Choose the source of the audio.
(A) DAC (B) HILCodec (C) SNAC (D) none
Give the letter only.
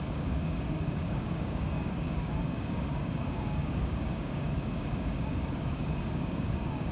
A